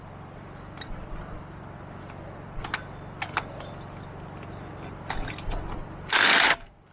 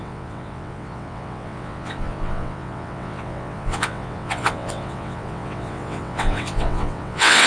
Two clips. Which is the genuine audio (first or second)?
first